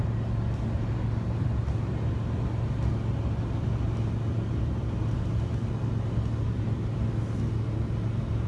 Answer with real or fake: real